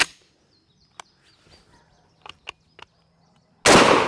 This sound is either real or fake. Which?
real